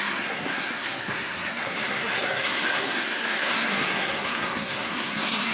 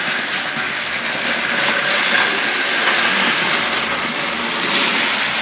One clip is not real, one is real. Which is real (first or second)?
second